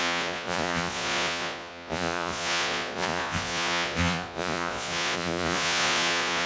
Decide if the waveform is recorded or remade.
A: remade